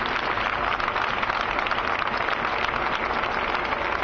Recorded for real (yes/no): yes